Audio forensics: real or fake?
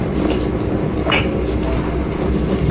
real